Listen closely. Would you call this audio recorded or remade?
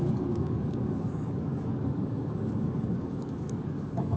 remade